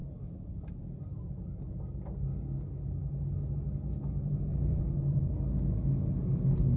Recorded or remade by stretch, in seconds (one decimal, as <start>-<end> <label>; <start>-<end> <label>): 0.0-0.9 remade; 0.9-4.5 recorded; 4.5-5.2 remade; 5.2-6.8 recorded